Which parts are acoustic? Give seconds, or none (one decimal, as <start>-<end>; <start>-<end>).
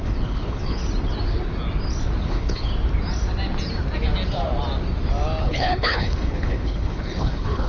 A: 0.8-2.2; 2.7-5.4